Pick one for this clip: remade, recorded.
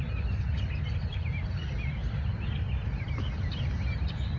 recorded